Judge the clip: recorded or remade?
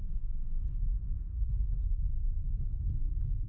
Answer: recorded